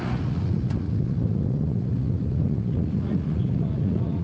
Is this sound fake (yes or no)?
yes